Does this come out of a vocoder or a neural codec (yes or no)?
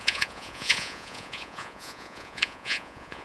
yes